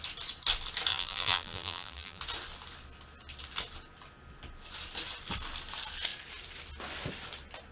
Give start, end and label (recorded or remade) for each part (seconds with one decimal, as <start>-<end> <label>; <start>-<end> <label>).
0.0-0.9 recorded; 0.9-2.2 remade; 2.2-7.7 recorded